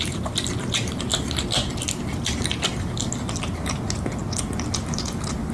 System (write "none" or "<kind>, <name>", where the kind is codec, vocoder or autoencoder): none